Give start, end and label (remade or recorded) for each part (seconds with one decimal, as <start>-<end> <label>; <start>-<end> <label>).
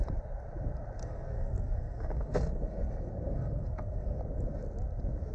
0.0-1.0 recorded; 1.0-4.2 remade; 4.2-5.3 recorded